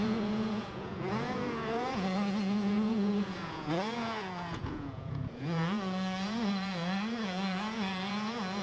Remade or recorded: remade